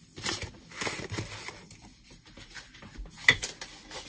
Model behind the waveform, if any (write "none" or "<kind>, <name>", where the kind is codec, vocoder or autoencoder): none